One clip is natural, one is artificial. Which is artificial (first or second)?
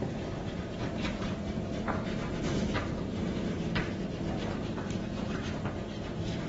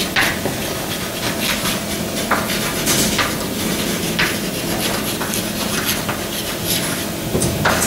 first